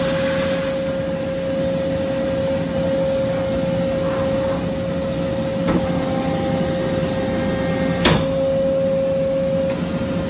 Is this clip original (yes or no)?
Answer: yes